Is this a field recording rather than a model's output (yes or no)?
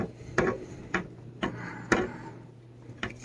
yes